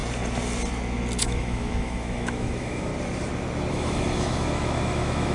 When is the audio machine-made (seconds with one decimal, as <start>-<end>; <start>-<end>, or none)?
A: 1.2-2.9; 3.7-5.3